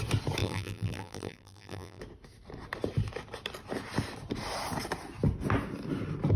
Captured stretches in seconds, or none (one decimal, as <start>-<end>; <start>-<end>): 0.0-0.4; 2.0-6.4